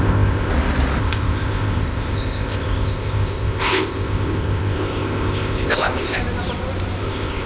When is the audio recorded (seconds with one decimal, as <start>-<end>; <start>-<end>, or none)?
0.5-1.0; 6.2-7.0